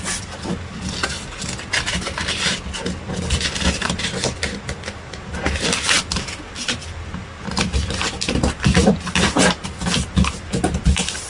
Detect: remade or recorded remade